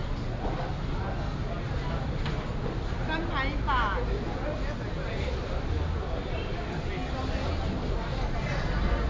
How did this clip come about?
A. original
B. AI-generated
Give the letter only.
A